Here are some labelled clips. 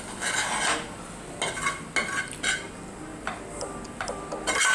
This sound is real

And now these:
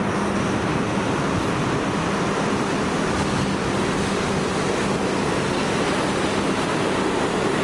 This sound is real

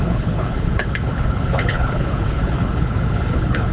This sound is fake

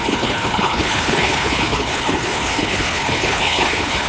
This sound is fake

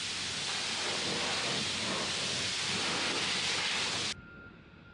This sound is real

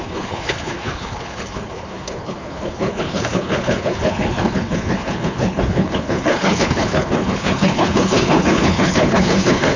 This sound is fake